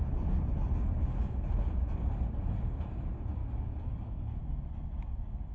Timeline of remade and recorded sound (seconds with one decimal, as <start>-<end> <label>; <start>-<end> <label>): 0.0-3.4 recorded; 3.4-4.4 remade; 4.4-5.5 recorded